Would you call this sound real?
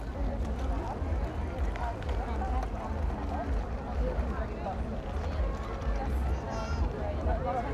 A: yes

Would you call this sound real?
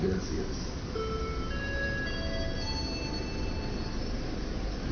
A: yes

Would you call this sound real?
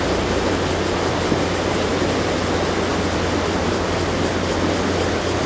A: yes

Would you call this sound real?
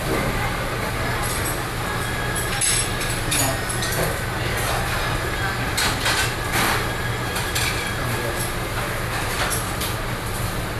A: yes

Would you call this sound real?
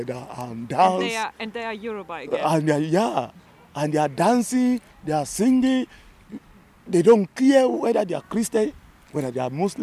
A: yes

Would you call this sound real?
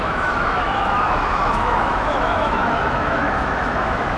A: no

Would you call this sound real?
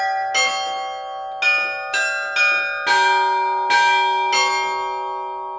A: yes